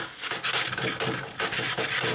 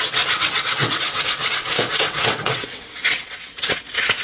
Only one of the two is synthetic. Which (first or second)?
second